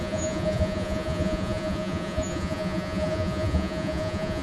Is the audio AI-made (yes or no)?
yes